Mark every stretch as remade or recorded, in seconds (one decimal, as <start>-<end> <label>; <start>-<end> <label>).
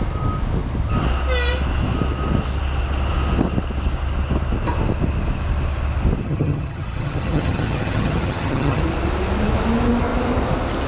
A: 0.0-6.2 recorded; 6.2-8.8 remade; 8.8-10.9 recorded